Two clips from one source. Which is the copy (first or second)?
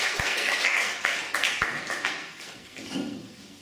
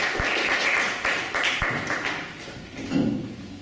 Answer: first